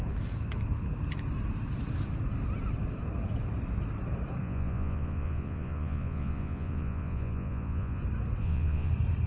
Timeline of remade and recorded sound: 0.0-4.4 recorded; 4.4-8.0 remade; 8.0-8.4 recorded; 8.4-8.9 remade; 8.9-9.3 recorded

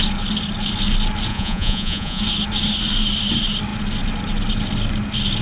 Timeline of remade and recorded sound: 0.0-1.3 recorded; 1.3-2.2 remade; 2.2-5.4 recorded

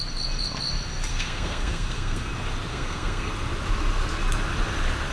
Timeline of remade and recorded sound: 0.0-1.1 recorded; 1.1-2.3 remade; 2.3-2.7 recorded; 2.7-3.3 remade; 3.3-5.1 recorded

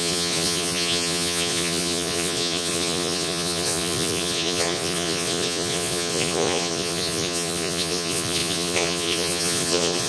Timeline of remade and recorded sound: 0.0-10.1 remade

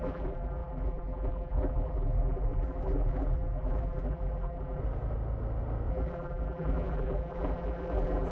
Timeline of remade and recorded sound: 0.0-4.8 remade; 4.8-5.9 recorded; 5.9-8.3 remade

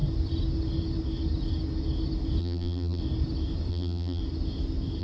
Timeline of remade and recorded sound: 0.0-2.4 recorded; 2.4-3.0 remade; 3.0-3.7 recorded; 3.7-4.2 remade; 4.2-5.0 recorded

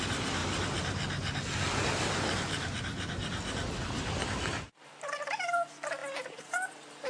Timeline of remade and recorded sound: 0.0-2.9 recorded; 2.9-5.2 remade; 5.2-7.1 recorded

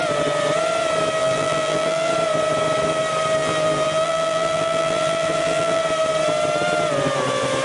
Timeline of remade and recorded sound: 0.0-1.2 recorded; 1.2-2.1 remade; 2.1-3.4 recorded; 3.4-5.8 remade; 5.8-7.6 recorded